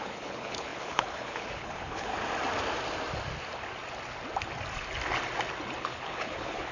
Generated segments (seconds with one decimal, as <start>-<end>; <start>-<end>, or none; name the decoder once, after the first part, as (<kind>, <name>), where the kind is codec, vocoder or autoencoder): 0.0-2.1 (codec, HILCodec); 5.8-6.7